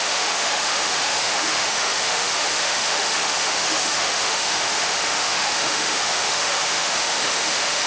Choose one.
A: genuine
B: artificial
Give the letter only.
B